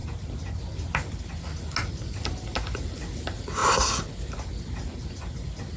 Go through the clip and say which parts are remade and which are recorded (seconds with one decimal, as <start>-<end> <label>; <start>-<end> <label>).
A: 0.0-1.8 recorded; 1.8-2.4 remade; 2.4-5.8 recorded